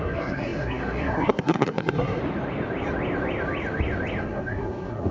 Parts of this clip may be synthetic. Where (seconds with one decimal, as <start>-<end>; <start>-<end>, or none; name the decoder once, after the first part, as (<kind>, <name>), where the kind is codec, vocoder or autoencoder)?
0.0-2.2 (codec, SNAC); 4.2-5.1